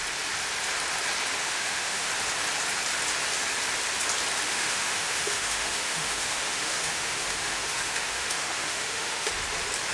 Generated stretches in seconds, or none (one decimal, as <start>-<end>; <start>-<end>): 1.4-2.1; 4.5-9.3